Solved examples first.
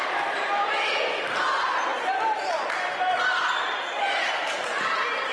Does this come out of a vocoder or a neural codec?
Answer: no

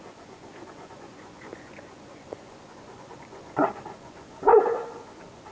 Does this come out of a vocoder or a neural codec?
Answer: yes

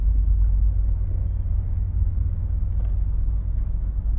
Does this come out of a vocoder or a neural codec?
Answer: no